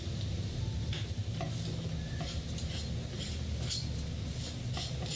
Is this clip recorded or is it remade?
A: recorded